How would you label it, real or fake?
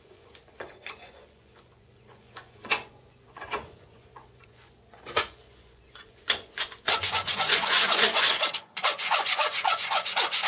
fake